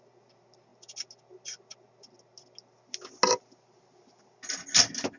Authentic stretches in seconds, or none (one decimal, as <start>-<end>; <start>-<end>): 0.0-5.2